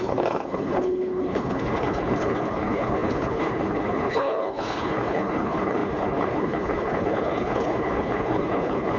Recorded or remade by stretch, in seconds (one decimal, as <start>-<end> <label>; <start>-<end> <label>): 0.0-9.0 remade

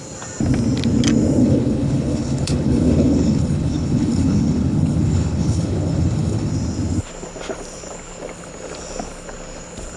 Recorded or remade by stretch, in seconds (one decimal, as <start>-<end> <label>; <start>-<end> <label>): 0.0-1.4 recorded; 1.4-6.5 remade; 6.5-10.0 recorded

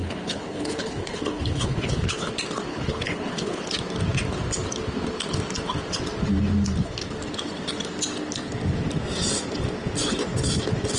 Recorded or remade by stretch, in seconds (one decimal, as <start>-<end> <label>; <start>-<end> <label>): 0.0-2.3 remade; 2.3-2.7 recorded; 2.7-3.6 remade; 3.6-11.0 recorded